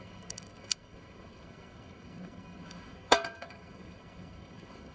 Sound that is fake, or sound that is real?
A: fake